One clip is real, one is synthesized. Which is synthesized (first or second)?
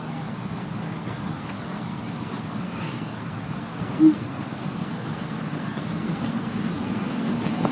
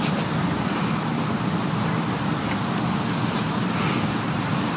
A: first